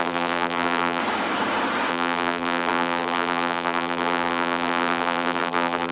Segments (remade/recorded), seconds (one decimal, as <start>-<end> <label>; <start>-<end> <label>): 0.0-1.0 remade; 1.0-1.9 recorded; 1.9-5.9 remade